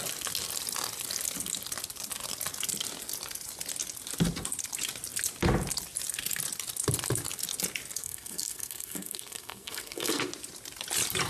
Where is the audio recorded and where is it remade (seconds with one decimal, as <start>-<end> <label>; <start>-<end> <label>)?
0.0-8.0 recorded; 8.0-10.3 remade; 10.3-11.3 recorded